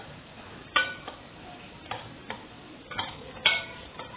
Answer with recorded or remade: remade